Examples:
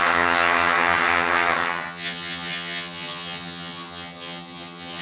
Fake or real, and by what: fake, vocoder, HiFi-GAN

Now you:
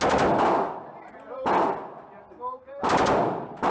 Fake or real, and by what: real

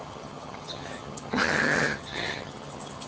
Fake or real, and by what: fake, vocoder, HiFi-GAN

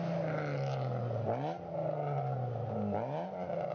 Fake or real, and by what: real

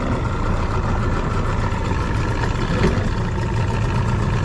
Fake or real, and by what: real